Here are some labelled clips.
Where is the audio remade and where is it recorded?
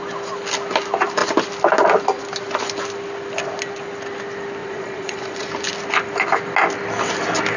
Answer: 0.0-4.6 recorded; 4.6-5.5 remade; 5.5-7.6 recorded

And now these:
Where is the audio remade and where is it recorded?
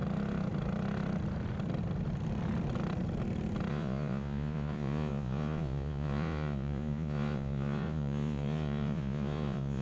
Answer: 0.0-3.7 recorded; 3.7-9.8 remade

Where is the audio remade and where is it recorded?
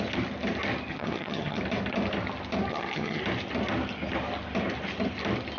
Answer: 0.0-0.9 recorded; 0.9-1.6 remade; 1.6-2.7 recorded; 2.7-3.2 remade; 3.2-5.6 recorded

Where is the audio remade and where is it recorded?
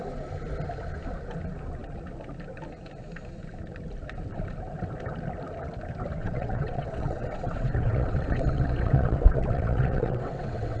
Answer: 0.0-6.2 recorded; 6.2-10.8 remade